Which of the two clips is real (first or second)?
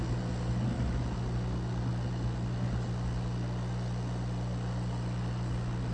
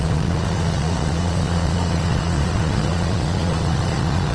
first